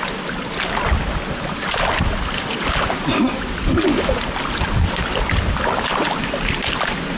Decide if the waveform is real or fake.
real